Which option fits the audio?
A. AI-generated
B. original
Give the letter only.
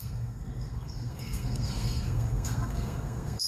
A